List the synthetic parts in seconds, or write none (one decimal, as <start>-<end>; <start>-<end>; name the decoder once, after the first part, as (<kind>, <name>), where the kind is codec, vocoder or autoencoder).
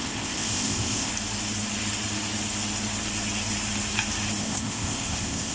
0.0-1.1 (codec, ZipCodec); 4.4-5.5